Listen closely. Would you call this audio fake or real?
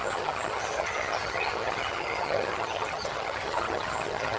fake